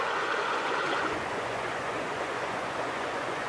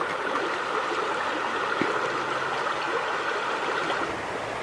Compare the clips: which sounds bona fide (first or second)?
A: second